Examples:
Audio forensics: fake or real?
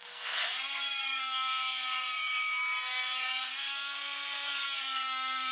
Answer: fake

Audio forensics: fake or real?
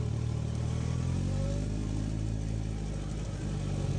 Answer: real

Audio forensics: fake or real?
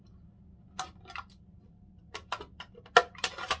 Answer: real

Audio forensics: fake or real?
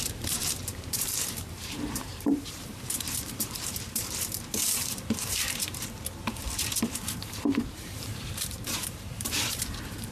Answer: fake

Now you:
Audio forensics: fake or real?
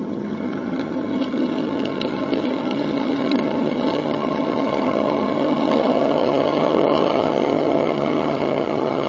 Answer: fake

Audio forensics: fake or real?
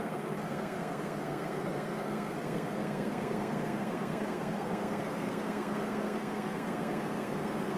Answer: fake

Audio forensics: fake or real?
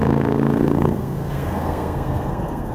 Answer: fake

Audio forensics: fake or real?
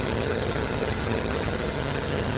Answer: fake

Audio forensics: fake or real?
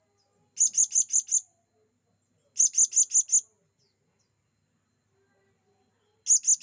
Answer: real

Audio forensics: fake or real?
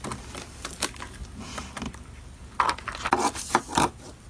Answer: real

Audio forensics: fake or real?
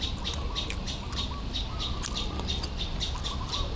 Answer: real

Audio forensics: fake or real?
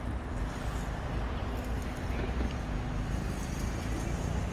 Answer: real